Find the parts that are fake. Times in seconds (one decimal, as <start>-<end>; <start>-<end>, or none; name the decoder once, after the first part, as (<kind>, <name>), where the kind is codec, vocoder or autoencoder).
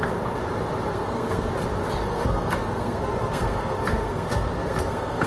0.9-1.5 (codec, SNAC); 2.1-5.3